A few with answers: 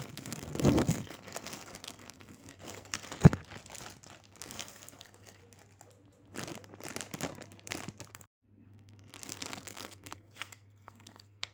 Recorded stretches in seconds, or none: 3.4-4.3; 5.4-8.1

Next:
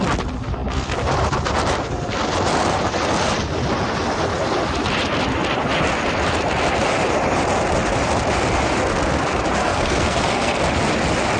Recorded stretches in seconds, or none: 0.0-9.6; 10.6-11.4

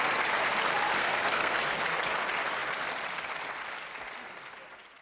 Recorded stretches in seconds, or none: 0.0-1.0; 1.6-5.0

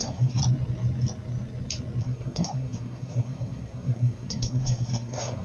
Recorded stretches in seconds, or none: 0.4-2.0